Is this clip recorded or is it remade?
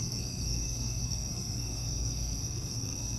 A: remade